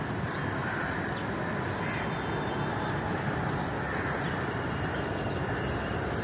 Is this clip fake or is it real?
real